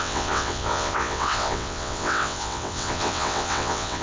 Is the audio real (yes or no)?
no